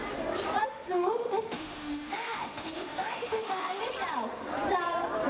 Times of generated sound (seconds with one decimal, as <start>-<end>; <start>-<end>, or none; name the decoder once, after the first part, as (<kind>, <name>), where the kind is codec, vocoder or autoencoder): 0.6-3.8 (autoencoder, DAC-VAE)